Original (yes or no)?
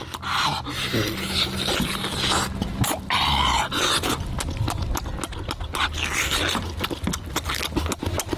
yes